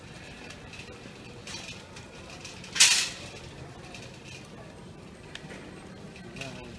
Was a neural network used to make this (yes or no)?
no